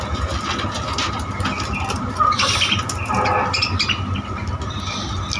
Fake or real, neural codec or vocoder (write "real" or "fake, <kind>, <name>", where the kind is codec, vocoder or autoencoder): real